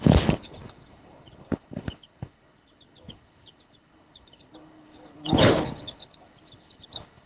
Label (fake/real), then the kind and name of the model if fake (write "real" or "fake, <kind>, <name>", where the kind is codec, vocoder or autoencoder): fake, codec, HILCodec